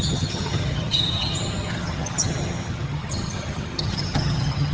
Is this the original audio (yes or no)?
no